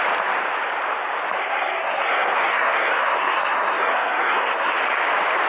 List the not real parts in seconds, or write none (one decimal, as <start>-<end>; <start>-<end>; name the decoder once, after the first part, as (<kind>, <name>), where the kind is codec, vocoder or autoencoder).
1.4-4.7 (codec, SNAC)